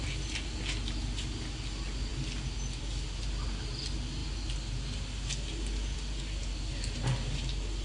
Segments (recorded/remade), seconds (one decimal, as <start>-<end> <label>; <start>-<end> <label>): 0.0-7.8 recorded